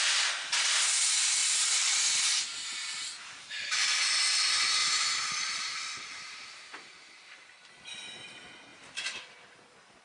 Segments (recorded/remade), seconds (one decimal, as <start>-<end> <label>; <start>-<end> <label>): 0.0-1.4 recorded; 1.4-4.0 remade; 4.0-4.8 recorded; 4.8-7.8 remade; 7.8-8.7 recorded; 8.7-10.0 remade